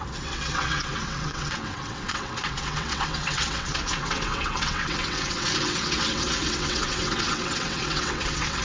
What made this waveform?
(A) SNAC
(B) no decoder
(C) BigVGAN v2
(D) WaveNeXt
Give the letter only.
D